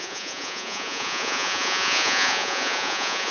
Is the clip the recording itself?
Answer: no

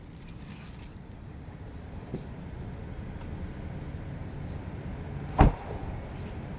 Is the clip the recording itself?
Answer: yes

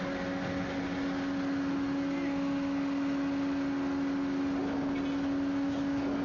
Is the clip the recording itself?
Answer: yes